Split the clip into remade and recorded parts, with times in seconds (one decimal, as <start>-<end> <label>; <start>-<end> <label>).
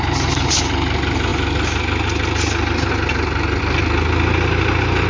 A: 0.0-5.1 recorded